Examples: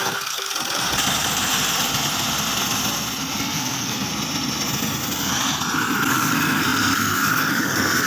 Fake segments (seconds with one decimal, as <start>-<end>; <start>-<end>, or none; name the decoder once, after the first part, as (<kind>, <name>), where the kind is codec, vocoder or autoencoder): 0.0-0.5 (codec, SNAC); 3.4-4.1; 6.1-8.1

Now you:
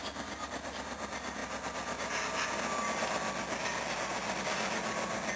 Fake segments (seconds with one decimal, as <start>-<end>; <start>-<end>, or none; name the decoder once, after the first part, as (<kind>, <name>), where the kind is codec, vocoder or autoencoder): none

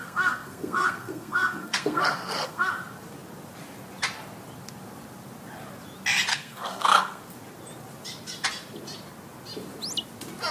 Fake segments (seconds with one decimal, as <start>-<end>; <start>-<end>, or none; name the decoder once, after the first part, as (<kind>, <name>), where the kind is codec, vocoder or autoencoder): 0.0-2.7 (codec, SNAC); 6.3-7.2